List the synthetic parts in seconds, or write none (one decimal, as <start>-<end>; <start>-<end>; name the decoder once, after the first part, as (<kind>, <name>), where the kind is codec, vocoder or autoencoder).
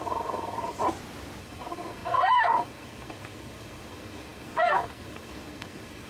0.0-0.8 (codec, SNAC); 1.4-6.1